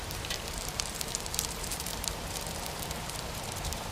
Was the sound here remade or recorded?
remade